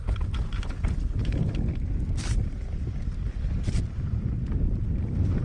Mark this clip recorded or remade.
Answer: recorded